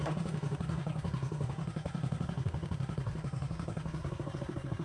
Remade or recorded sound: remade